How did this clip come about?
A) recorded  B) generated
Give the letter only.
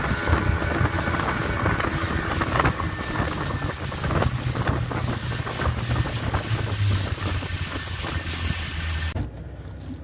A